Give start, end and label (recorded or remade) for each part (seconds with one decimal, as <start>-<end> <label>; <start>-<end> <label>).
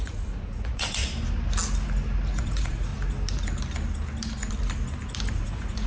0.0-1.0 remade; 1.0-2.4 recorded; 2.4-2.9 remade; 2.9-5.3 recorded; 5.3-5.9 remade